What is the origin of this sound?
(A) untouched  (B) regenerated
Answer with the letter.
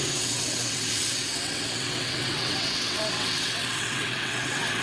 B